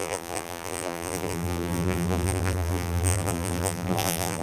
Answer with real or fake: fake